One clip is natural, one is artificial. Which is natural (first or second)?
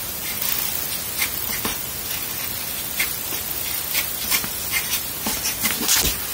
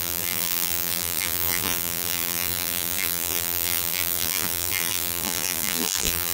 first